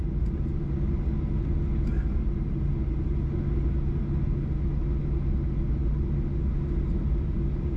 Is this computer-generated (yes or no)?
no